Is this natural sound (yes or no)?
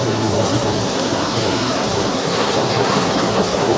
no